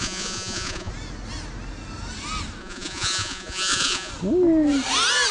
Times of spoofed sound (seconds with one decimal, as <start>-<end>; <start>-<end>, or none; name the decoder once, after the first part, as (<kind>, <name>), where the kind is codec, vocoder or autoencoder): 0.0-0.9 (vocoder, Vocos); 2.6-4.1